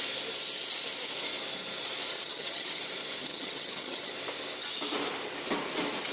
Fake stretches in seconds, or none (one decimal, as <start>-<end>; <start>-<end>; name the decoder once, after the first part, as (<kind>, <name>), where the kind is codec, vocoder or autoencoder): 2.1-2.8 (vocoder, HiFi-GAN); 3.2-4.1